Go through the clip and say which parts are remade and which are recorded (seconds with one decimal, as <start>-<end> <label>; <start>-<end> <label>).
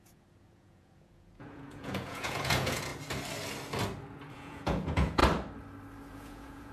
0.0-2.9 remade; 2.9-4.3 recorded; 4.3-5.2 remade; 5.2-6.1 recorded; 6.1-6.7 remade